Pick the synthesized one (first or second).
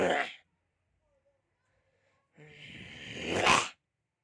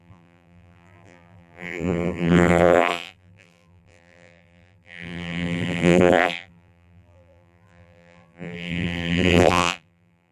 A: second